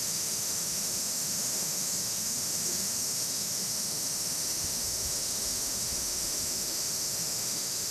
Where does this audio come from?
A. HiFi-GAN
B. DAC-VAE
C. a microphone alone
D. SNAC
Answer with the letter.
B